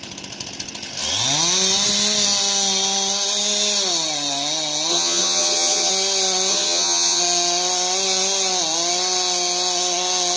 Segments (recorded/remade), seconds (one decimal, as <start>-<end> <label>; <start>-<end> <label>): 0.0-4.9 recorded; 4.9-5.9 remade; 5.9-6.5 recorded; 6.5-7.2 remade; 7.2-10.4 recorded

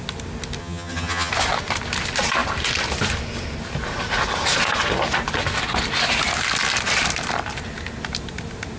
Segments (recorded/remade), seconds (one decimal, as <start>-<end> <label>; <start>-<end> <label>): 0.0-0.6 recorded; 0.6-1.3 remade; 1.3-8.8 recorded